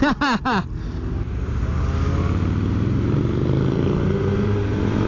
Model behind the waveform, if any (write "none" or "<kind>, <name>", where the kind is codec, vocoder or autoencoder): none